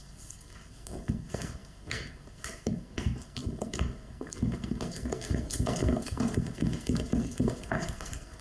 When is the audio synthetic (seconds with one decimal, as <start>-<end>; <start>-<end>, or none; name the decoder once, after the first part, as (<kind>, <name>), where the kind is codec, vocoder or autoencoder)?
0.0-8.4 (codec, SNAC)